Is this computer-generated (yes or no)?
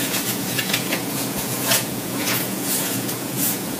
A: yes